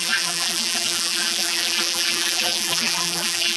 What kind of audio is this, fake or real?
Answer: fake